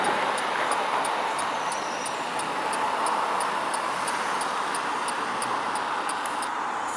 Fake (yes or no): no